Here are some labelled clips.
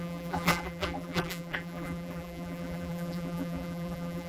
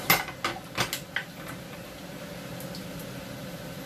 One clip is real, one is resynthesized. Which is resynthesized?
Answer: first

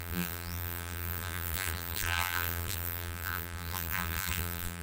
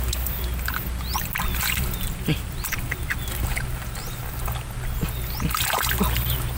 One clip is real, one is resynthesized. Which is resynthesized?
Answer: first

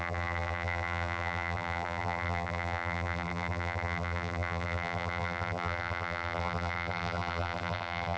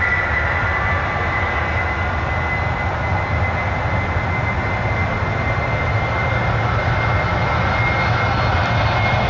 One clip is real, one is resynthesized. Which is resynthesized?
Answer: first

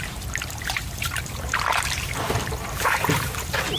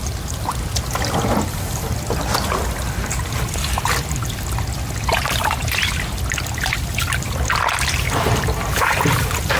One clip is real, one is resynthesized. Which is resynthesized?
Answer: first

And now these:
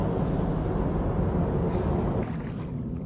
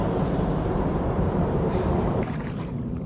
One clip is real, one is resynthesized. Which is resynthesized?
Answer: second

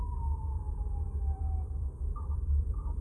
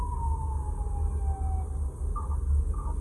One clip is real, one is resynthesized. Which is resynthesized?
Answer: first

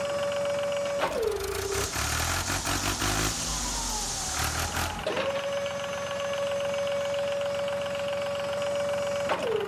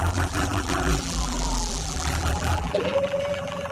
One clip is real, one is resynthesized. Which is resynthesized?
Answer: second